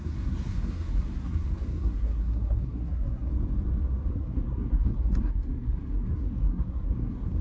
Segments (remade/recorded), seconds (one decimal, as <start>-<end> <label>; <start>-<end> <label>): 0.0-3.3 remade; 3.3-4.1 recorded; 4.1-7.4 remade